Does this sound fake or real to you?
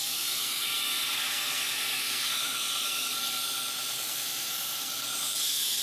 fake